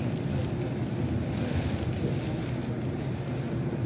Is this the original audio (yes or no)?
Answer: yes